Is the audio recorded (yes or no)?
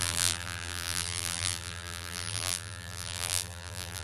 no